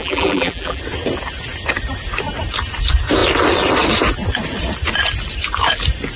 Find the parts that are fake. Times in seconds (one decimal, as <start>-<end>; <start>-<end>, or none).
0.0-0.8